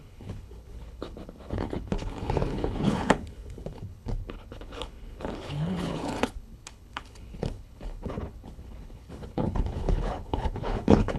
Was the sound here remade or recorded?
remade